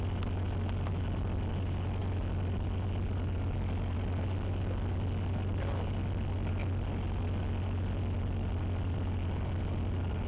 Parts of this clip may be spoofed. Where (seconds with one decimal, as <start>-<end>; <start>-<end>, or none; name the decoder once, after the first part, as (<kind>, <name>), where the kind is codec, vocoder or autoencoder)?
none